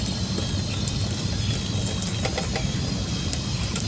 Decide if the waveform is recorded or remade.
recorded